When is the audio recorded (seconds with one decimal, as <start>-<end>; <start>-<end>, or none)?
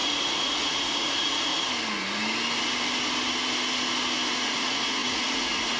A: 1.5-4.4